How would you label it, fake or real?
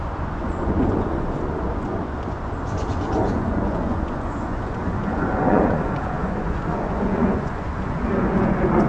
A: fake